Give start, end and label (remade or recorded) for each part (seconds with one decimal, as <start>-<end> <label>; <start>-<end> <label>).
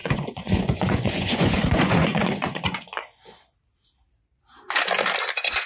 0.0-3.0 remade; 3.0-5.7 recorded